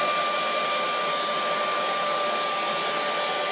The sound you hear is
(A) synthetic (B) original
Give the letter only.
B